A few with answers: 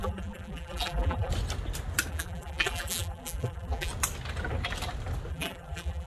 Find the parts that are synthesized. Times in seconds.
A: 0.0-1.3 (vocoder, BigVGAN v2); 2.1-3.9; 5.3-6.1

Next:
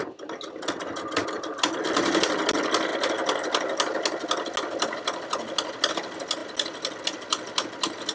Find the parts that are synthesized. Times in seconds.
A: 1.2-2.4 (vocoder, BigVGAN v2)

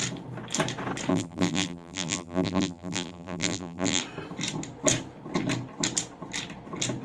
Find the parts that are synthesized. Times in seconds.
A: 1.1-4.0 (vocoder, BigVGAN v2)